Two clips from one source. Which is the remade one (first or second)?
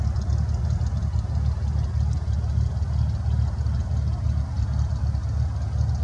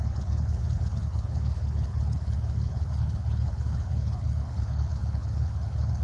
second